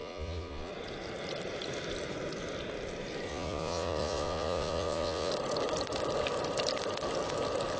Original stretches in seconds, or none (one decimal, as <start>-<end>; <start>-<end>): 0.7-3.3; 5.3-7.8